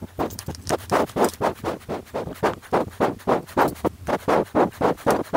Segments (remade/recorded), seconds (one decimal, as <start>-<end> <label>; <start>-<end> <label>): 0.0-5.4 recorded